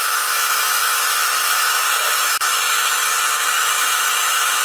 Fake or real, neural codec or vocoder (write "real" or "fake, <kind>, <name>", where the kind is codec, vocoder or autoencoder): fake, autoencoder, DAC-VAE